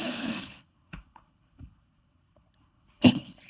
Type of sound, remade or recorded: remade